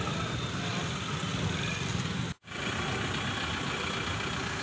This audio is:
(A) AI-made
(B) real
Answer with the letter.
B